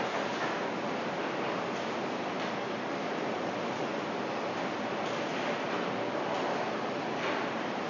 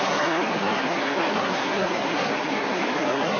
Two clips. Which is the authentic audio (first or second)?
first